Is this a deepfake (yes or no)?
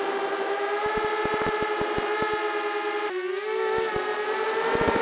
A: no